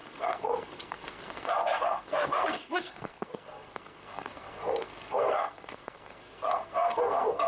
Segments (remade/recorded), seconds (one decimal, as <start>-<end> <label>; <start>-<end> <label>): 0.0-7.5 remade